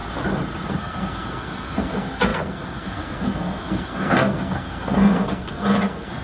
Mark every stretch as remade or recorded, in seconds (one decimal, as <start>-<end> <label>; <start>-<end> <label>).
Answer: 0.0-0.7 recorded; 0.7-6.2 remade